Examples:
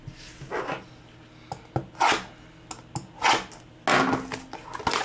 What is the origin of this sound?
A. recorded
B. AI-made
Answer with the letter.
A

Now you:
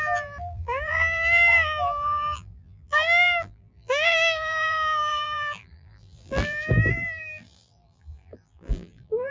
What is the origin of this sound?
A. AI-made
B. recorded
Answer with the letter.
A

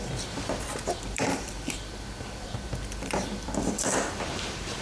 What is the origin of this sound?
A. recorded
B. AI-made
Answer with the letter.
B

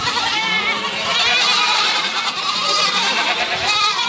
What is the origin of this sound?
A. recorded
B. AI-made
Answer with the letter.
B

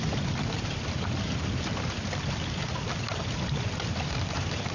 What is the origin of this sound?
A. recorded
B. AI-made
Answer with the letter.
B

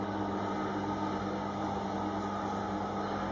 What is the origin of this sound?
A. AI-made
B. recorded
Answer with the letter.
B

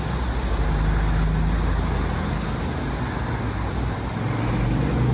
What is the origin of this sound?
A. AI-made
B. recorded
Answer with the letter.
B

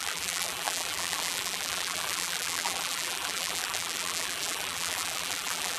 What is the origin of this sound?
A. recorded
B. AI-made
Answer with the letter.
B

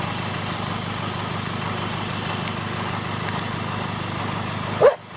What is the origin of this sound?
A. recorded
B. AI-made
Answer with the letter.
A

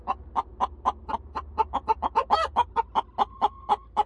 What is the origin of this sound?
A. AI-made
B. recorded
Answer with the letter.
B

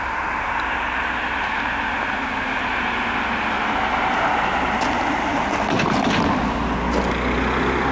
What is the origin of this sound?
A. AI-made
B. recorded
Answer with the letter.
B